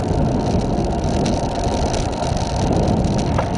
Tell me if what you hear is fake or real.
real